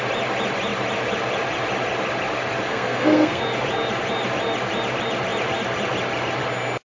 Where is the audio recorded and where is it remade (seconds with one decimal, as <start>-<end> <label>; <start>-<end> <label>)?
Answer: 0.0-2.7 recorded; 2.7-3.4 remade; 3.4-6.9 recorded